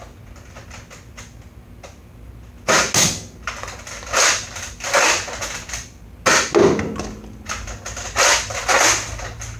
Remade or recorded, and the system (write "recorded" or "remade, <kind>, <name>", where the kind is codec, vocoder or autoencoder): recorded